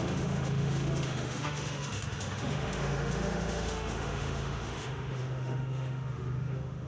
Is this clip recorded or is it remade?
remade